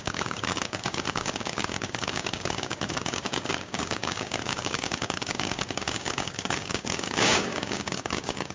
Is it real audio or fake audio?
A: fake